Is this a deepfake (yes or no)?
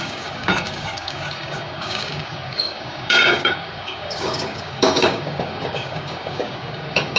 yes